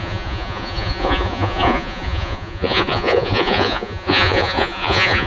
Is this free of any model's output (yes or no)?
no